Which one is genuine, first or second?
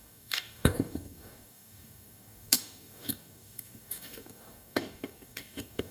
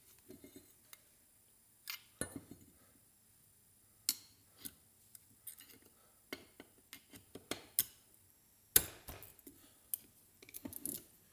second